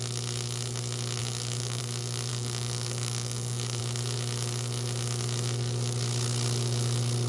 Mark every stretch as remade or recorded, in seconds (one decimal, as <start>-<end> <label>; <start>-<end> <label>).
0.0-1.2 recorded; 1.2-1.8 remade; 1.8-2.3 recorded; 2.3-3.8 remade; 3.8-7.3 recorded